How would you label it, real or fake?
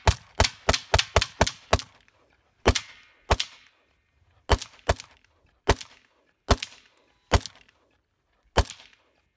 real